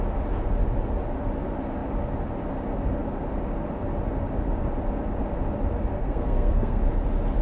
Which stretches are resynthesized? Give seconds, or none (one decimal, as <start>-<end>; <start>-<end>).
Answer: 5.9-6.8